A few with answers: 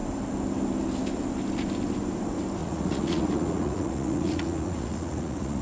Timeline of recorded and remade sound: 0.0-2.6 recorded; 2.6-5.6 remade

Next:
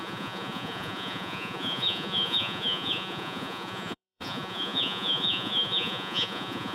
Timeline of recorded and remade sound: 0.0-6.7 remade

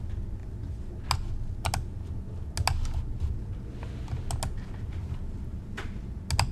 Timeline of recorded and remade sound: 0.0-6.5 recorded

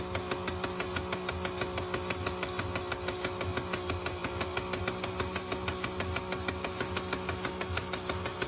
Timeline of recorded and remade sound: 0.0-8.5 recorded

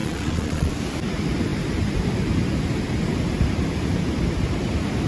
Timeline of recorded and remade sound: 0.0-0.7 remade; 0.7-5.1 recorded

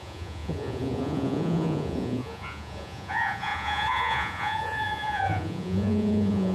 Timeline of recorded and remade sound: 0.0-6.5 remade